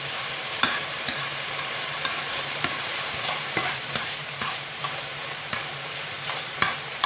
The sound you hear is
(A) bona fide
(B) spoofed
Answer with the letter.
B